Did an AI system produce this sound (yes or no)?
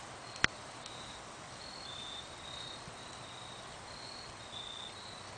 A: no